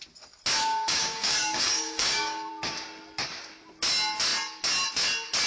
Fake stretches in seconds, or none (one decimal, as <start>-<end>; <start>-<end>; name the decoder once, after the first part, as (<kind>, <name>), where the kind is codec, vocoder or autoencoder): 0.6-2.5 (codec, DAC)